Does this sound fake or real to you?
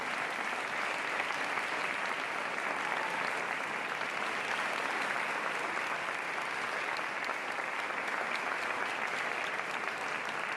real